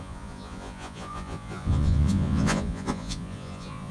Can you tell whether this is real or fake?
fake